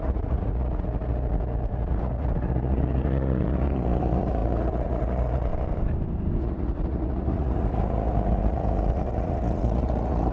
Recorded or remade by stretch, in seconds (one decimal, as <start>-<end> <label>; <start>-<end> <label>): 0.0-5.5 remade; 5.5-6.4 recorded; 6.4-10.3 remade